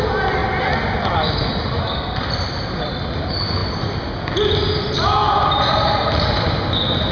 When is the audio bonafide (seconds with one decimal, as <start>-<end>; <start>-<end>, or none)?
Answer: 0.0-0.4; 3.0-7.1